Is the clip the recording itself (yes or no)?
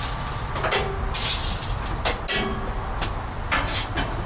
yes